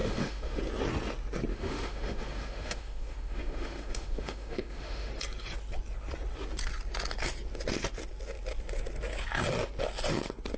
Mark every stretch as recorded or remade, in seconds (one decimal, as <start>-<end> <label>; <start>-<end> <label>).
0.0-0.6 remade; 0.6-1.5 recorded; 1.5-5.1 remade; 5.1-10.6 recorded